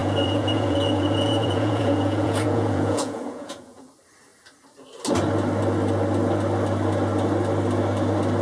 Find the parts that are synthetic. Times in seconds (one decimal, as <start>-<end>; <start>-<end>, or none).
0.0-3.9